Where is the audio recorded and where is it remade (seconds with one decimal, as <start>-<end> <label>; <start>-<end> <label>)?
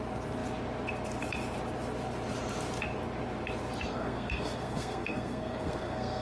0.0-3.9 recorded; 3.9-6.2 remade